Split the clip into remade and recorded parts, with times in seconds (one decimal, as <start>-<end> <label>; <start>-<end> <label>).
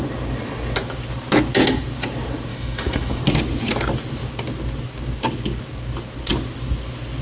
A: 0.0-2.5 recorded; 2.5-3.2 remade; 3.2-7.2 recorded